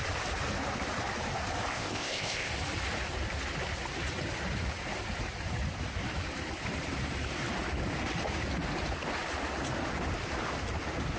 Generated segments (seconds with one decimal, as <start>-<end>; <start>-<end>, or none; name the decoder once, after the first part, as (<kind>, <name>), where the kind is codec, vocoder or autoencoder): 1.7-2.5 (codec, ZipCodec)